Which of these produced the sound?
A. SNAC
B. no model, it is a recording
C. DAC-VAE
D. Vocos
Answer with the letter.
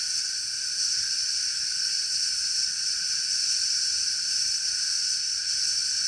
B